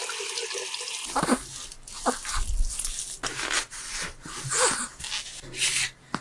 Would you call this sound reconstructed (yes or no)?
no